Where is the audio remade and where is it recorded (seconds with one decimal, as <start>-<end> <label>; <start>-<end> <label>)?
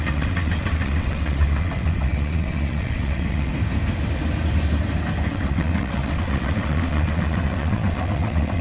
0.0-3.5 remade; 3.5-5.3 recorded; 5.3-8.6 remade